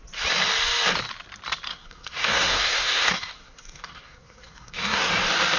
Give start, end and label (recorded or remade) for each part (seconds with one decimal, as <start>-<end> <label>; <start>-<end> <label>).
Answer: 0.0-1.7 recorded; 1.7-5.1 remade; 5.1-5.6 recorded